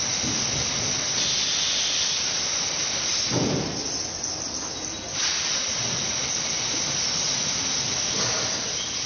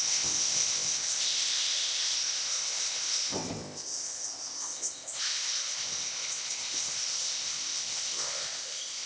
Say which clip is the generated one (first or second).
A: second